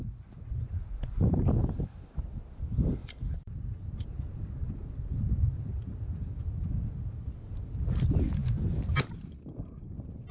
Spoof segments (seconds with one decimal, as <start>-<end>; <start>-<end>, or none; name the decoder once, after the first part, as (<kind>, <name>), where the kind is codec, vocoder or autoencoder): 3.0-3.6 (vocoder, BigVGAN v2)